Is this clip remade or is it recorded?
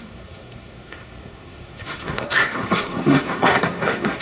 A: remade